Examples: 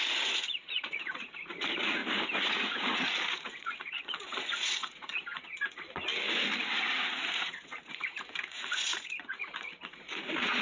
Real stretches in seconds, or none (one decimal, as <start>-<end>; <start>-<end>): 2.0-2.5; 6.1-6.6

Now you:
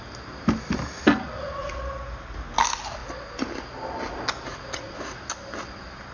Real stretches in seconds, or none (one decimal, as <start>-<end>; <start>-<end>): 0.0-1.2; 1.8-4.5; 5.3-6.1

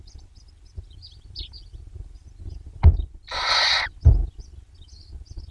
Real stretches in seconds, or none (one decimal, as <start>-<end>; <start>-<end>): 0.0-5.5

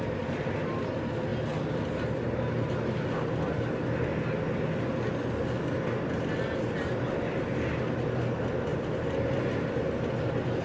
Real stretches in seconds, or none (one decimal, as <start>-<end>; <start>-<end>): 0.0-10.6

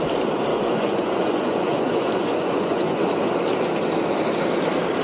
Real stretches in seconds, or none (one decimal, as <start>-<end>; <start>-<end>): 0.0-0.5; 3.1-5.0